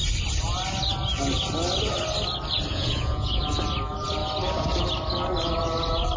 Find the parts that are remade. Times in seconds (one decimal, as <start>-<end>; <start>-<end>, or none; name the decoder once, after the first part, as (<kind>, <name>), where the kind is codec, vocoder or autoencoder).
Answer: 2.7-3.4 (vocoder, Vocos)